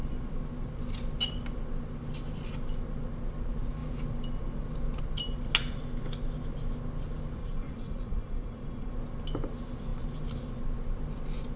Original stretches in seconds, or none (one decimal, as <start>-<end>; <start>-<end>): 0.0-7.4; 8.9-11.6